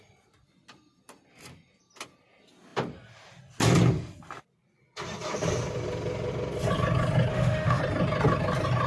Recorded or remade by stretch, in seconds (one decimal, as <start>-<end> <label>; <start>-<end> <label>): 0.0-7.3 recorded; 7.3-7.8 remade; 7.8-8.9 recorded

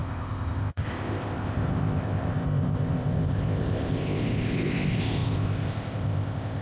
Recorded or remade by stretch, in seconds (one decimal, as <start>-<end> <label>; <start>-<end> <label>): 0.0-6.6 remade

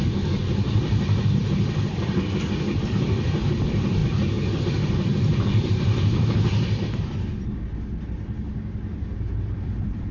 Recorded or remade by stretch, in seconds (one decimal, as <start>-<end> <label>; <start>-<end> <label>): 0.0-2.0 recorded; 2.0-4.0 remade; 4.0-4.6 recorded; 4.6-10.1 remade